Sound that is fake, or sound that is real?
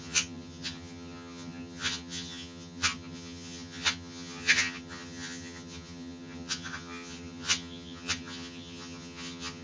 fake